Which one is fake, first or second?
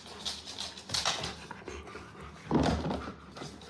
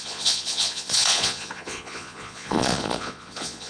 second